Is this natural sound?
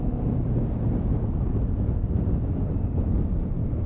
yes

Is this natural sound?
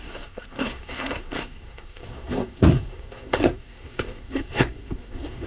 no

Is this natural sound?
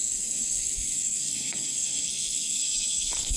no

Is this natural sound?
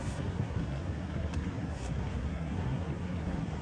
no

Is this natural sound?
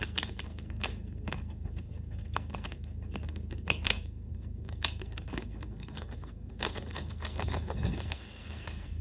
no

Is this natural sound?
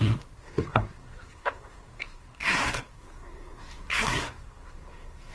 no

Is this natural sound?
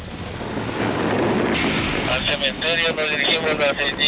yes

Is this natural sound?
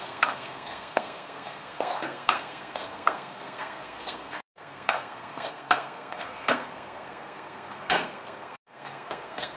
no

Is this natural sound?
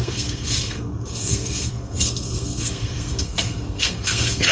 no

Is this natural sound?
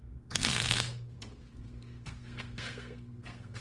no